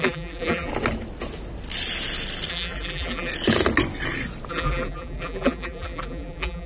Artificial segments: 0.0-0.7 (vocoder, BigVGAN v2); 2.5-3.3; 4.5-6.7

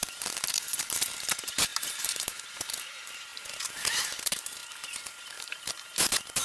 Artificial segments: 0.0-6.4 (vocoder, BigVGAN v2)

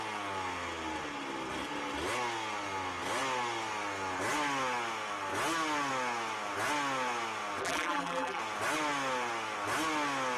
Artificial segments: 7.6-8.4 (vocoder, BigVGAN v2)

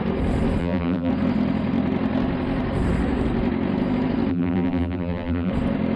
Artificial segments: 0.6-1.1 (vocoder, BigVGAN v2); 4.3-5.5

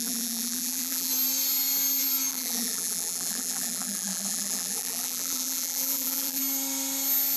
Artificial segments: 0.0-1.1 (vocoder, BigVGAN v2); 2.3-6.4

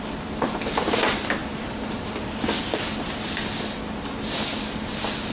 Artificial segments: none

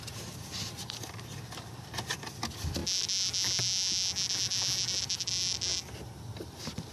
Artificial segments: none

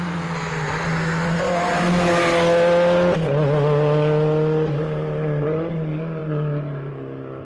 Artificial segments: none